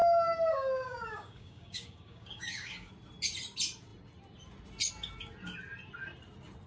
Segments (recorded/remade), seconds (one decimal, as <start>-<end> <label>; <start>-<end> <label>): 0.0-2.9 remade; 2.9-6.7 recorded